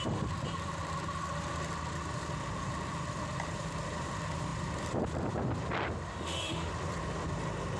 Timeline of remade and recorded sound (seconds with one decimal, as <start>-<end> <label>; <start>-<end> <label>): 0.0-6.1 recorded; 6.1-6.7 remade; 6.7-7.8 recorded